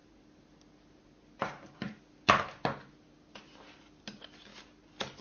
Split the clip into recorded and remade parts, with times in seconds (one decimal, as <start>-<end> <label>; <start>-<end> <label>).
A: 0.0-5.2 recorded